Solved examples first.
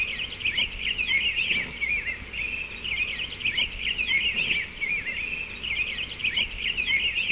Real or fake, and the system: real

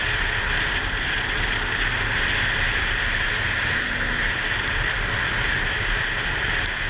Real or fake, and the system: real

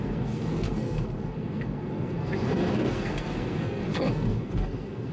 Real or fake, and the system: fake, codec, SNAC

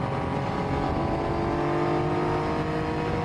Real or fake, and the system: real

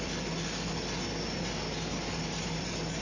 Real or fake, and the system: real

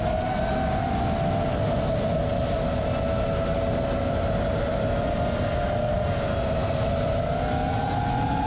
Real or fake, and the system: real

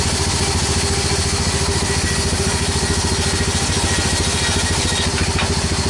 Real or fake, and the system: real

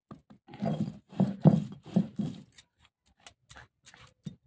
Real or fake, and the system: real